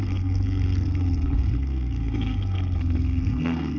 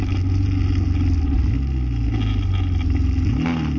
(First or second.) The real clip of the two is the second